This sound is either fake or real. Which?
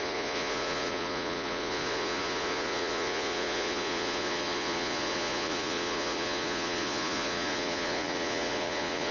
fake